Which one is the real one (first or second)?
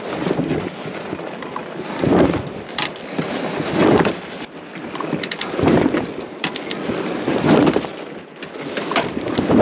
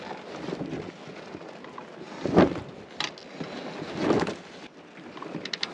second